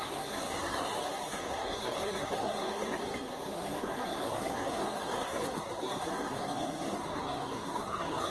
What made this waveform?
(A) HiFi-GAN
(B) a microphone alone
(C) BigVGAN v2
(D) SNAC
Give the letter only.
D